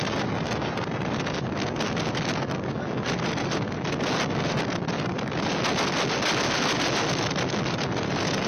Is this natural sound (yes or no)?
yes